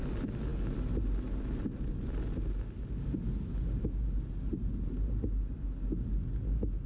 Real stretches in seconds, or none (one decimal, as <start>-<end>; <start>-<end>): 0.0-6.9